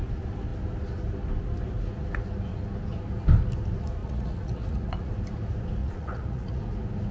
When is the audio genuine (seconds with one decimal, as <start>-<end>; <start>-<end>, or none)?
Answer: 0.0-4.0; 5.1-5.8; 6.6-7.1